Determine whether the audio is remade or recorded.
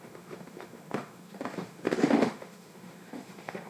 remade